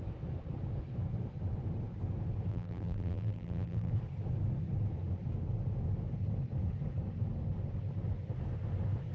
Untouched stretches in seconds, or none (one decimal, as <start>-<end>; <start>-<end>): 0.0-2.5; 3.9-9.1